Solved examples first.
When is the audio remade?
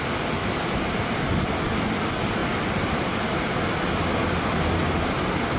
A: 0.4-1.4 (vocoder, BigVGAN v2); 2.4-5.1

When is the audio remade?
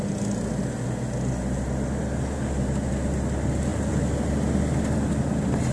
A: 3.7-4.2 (vocoder, BigVGAN v2)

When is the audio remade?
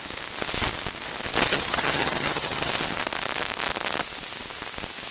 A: 1.5-2.7 (vocoder, HiFi-GAN)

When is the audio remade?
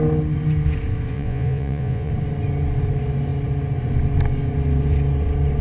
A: 1.1-2.1 (vocoder, Vocos)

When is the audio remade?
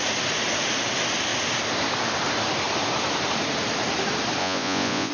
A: 4.4-5.1 (vocoder, Vocos)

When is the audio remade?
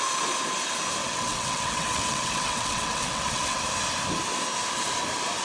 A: 1.0-3.6 (vocoder, WaveNeXt)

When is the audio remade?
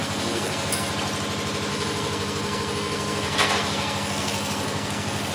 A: 0.0-0.9 (codec, SNAC); 1.7-5.3